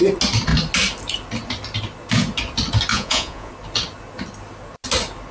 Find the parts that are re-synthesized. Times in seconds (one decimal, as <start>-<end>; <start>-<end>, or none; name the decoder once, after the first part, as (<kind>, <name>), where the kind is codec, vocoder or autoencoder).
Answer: 2.9-3.5 (vocoder, Vocos)